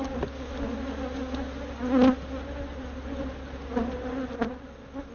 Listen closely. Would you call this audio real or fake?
real